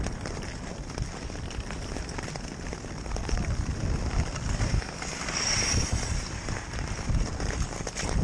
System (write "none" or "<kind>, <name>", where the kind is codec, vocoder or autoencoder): vocoder, BigVGAN v2